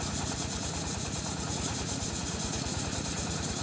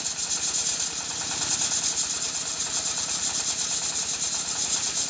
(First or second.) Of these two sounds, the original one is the second